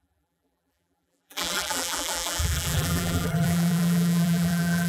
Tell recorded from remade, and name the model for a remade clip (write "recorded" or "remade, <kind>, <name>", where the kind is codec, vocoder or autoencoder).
remade, vocoder, BigVGAN v2